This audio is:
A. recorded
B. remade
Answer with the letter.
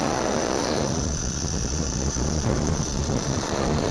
B